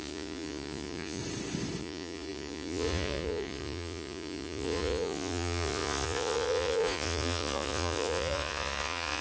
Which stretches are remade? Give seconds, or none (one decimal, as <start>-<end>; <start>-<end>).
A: 0.0-1.2; 1.8-9.2